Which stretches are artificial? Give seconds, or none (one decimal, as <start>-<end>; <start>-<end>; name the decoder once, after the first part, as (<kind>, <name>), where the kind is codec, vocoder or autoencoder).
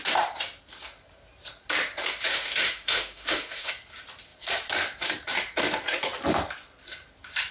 2.3-3.7 (autoencoder, DAC-VAE)